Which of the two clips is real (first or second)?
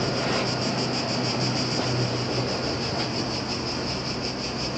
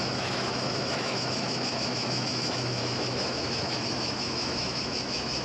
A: first